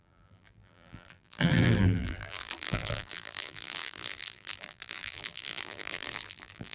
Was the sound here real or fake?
fake